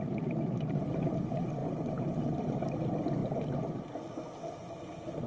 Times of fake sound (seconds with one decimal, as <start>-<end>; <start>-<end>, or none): none